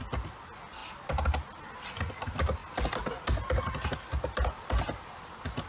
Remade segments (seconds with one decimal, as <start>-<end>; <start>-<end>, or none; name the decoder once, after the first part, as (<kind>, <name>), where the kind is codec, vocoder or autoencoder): none